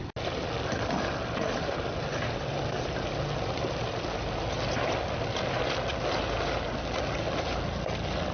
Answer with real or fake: real